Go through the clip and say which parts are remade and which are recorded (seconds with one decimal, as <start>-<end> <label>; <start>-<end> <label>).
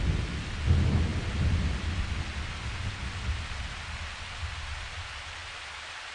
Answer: 0.0-6.1 recorded